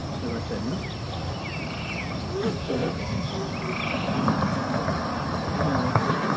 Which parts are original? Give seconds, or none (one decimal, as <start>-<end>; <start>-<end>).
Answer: 0.0-2.5; 3.3-5.9